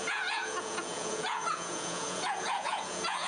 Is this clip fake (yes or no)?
yes